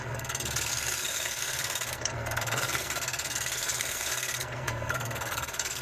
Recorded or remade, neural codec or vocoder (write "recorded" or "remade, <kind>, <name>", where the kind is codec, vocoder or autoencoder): remade, codec, SNAC